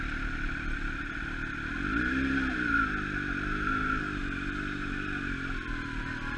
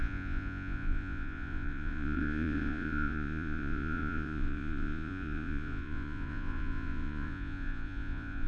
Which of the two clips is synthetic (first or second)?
second